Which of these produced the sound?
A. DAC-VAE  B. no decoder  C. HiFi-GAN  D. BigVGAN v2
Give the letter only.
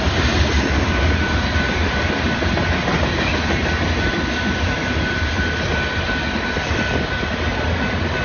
B